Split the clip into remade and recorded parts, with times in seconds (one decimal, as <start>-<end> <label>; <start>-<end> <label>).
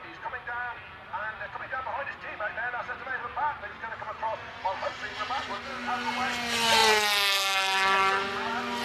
0.0-8.8 recorded